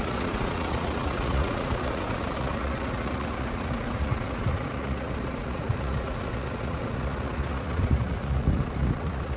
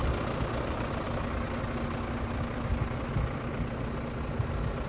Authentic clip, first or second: second